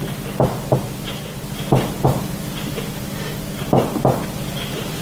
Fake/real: real